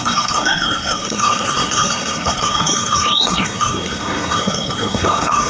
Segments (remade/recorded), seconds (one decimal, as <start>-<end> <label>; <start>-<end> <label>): 0.0-5.5 remade